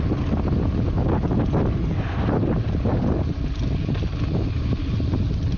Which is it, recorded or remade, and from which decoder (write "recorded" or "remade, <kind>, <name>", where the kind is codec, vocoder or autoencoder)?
recorded